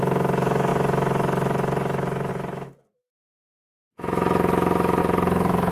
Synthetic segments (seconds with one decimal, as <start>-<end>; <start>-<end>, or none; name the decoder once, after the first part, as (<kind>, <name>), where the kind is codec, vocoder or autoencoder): 0.0-5.7 (autoencoder, DAC-VAE)